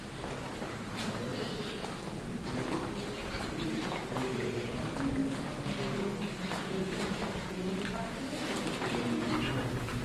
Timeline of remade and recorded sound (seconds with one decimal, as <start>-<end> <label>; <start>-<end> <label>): 0.0-10.0 recorded